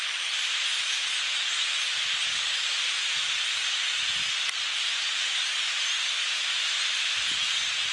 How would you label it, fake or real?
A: real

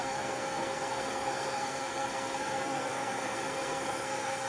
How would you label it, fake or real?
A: fake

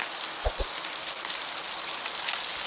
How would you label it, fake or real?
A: real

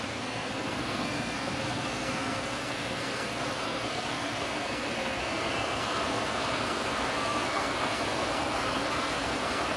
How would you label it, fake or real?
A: fake